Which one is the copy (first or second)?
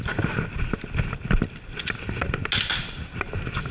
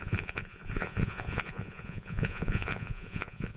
second